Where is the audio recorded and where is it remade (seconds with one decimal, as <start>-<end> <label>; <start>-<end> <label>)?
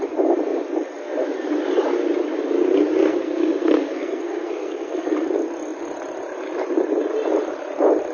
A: 0.0-3.0 recorded; 3.0-5.1 remade; 5.1-8.1 recorded